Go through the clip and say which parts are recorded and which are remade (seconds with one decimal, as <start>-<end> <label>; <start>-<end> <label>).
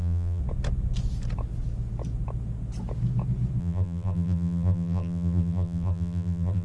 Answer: 0.0-0.4 remade; 0.4-3.6 recorded; 3.6-6.6 remade